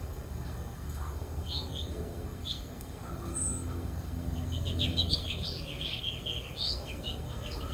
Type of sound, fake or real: fake